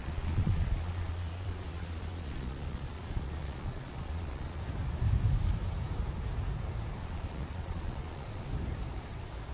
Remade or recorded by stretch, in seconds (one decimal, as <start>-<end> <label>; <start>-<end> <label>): 0.0-4.6 remade; 4.6-7.0 recorded; 7.0-8.5 remade; 8.5-9.5 recorded